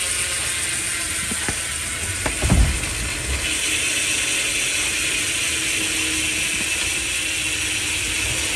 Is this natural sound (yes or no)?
yes